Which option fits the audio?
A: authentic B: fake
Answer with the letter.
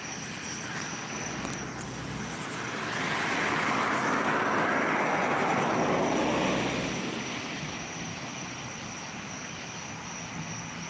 A